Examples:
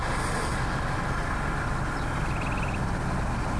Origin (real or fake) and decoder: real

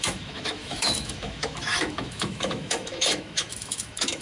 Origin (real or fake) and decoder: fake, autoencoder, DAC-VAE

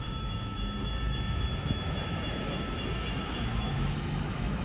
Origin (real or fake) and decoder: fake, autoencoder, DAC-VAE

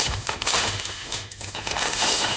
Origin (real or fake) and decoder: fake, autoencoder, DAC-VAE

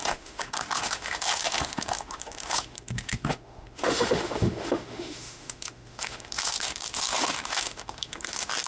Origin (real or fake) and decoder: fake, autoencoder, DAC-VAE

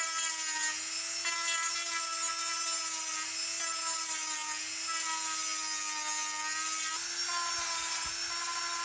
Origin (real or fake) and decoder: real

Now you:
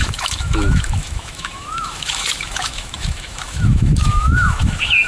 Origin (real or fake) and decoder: fake, autoencoder, DAC-VAE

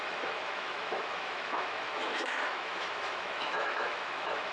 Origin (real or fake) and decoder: fake, autoencoder, DAC-VAE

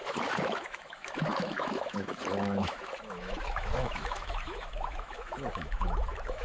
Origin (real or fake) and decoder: fake, autoencoder, DAC-VAE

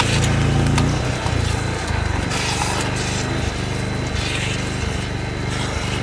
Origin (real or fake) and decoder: real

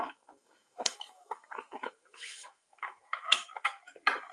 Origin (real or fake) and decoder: fake, autoencoder, DAC-VAE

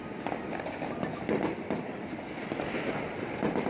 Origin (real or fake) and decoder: real